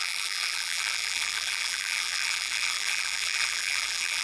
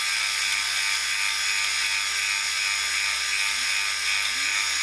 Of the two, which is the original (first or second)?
second